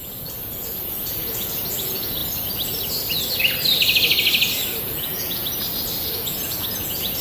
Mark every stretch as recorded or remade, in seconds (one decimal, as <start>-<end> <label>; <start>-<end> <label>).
0.0-2.2 remade; 2.2-4.8 recorded; 4.8-5.4 remade; 5.4-6.1 recorded; 6.1-7.2 remade